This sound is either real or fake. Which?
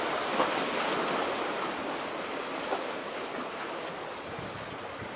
real